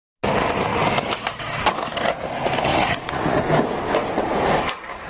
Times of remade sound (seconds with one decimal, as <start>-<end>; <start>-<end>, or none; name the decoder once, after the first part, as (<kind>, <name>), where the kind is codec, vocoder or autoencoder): 2.7-3.4 (vocoder, Vocos)